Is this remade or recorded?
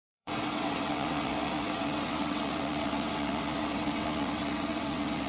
remade